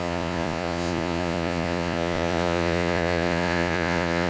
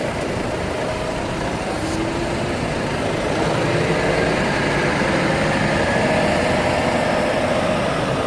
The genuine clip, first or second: second